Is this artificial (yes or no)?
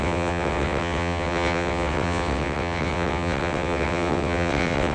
yes